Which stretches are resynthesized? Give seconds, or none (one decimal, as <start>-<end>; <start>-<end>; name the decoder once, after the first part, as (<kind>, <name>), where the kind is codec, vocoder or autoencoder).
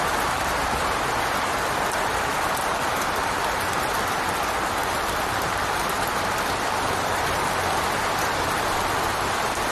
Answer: 4.8-7.2 (vocoder, BigVGAN v2)